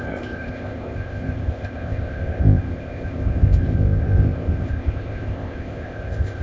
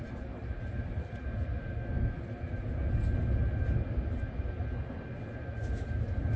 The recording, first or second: second